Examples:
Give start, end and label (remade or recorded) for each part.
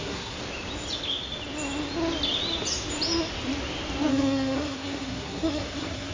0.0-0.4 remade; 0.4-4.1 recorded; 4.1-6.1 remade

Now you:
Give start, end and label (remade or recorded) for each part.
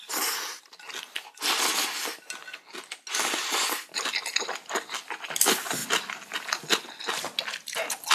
0.0-8.1 recorded